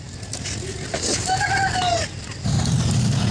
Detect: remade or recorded recorded